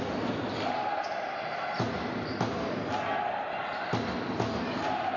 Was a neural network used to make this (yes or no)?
no